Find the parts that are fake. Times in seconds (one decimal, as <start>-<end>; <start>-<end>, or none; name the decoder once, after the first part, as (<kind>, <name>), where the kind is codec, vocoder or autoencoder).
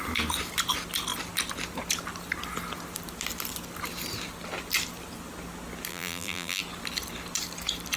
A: 5.9-6.6 (vocoder, BigVGAN v2)